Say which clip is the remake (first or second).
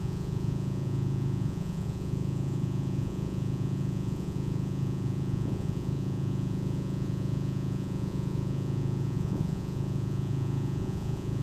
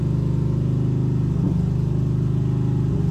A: first